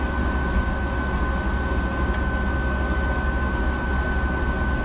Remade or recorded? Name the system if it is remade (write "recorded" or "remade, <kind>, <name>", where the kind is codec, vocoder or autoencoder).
recorded